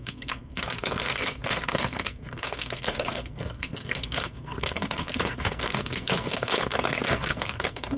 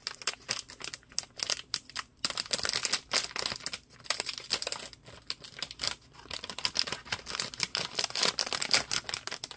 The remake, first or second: first